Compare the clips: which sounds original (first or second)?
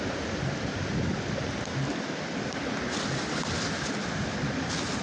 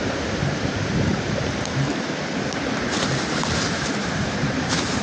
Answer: first